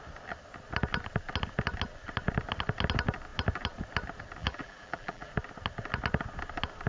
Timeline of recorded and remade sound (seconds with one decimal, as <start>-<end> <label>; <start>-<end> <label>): 0.0-4.4 recorded; 4.4-5.3 remade; 5.3-6.9 recorded